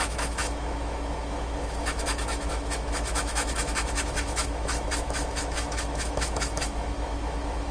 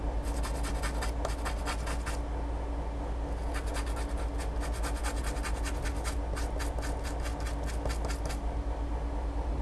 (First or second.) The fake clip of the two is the first